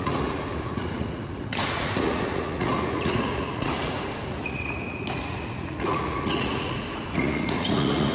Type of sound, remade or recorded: remade